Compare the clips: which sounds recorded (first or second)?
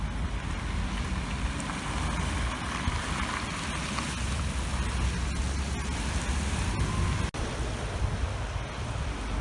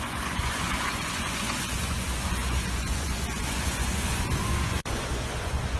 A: first